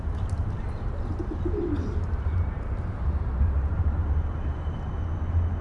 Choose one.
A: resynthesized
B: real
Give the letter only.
B